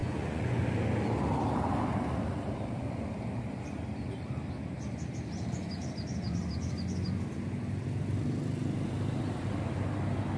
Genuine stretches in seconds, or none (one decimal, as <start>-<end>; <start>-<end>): 0.6-10.4